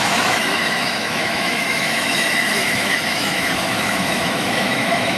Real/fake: fake